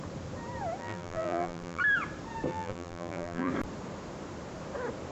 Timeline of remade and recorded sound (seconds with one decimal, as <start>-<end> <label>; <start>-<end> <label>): 0.0-0.8 recorded; 0.8-1.8 remade; 1.8-2.5 recorded; 2.5-3.5 remade; 3.5-5.1 recorded